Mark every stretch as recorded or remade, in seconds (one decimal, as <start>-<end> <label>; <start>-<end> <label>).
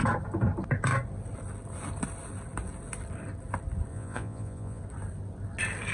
0.0-3.9 recorded; 3.9-4.8 remade; 4.8-5.9 recorded